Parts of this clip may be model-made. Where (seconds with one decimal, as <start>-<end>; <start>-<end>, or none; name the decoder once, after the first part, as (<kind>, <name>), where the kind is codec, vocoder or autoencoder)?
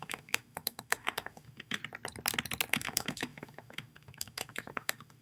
0.0-1.8 (autoencoder, DAC-VAE); 2.7-5.2